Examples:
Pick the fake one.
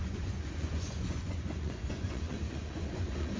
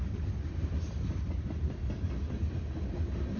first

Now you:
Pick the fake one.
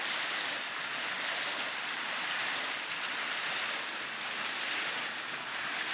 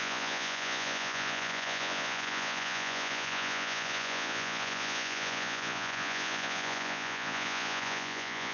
second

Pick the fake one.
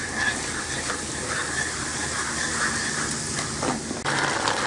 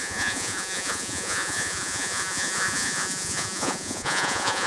second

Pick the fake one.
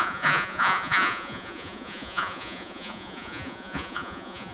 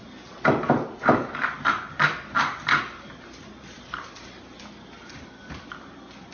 first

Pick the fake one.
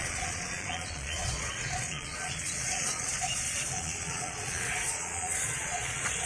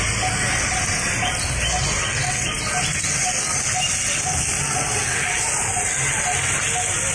first